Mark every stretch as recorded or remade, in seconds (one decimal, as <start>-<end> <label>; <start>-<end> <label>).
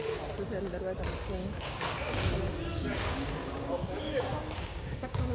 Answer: 0.0-1.4 recorded; 1.4-2.3 remade; 2.3-2.7 recorded; 2.7-5.3 remade